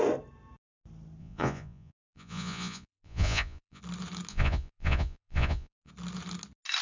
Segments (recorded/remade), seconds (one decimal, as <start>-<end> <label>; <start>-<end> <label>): 0.0-1.2 recorded; 1.2-3.8 remade; 3.8-4.3 recorded; 4.3-5.9 remade; 5.9-6.8 recorded